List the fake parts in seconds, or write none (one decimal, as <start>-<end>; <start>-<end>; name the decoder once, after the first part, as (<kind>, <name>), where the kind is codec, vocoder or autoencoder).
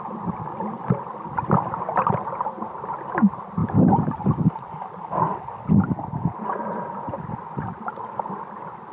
none